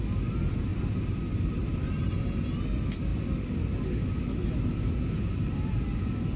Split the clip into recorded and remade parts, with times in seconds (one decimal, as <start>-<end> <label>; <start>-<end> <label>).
0.0-6.4 recorded